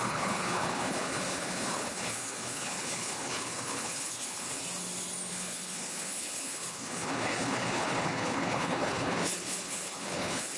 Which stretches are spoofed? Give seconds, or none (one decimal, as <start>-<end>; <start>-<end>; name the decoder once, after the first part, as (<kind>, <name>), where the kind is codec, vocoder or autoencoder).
0.0-4.6 (codec, HILCodec); 5.3-10.6